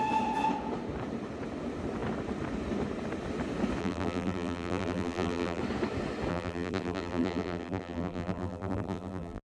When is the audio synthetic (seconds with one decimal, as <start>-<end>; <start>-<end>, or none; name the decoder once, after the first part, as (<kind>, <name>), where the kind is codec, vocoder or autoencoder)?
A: 3.8-5.6 (vocoder, BigVGAN v2); 6.3-9.4